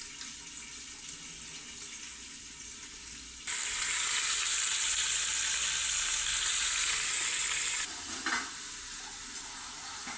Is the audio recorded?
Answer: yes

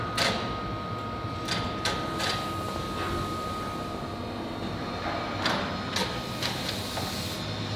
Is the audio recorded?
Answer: yes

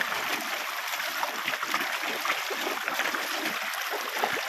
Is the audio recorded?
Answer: yes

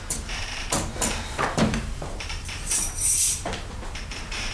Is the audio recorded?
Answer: no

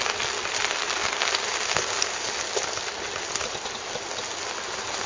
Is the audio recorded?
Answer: yes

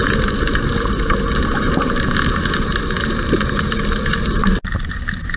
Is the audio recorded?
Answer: no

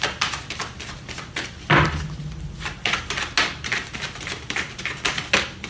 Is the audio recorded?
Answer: yes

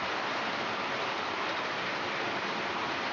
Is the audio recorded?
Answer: no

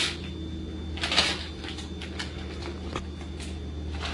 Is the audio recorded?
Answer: yes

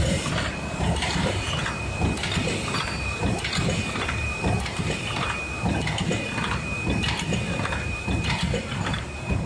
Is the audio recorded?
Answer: no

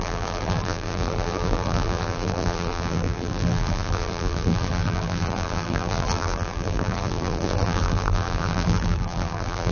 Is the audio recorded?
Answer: no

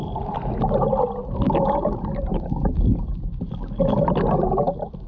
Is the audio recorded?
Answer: yes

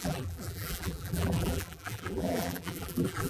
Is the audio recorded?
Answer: no